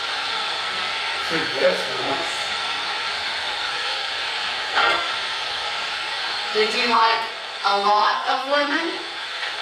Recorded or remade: remade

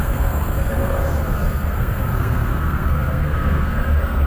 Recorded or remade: remade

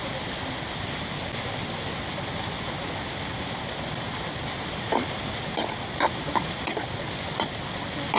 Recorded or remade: recorded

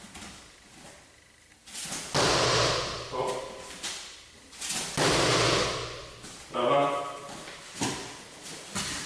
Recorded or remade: recorded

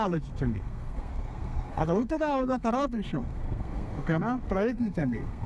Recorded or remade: remade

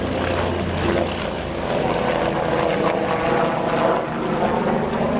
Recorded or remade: recorded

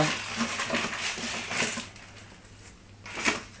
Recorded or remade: recorded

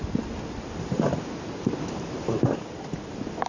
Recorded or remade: recorded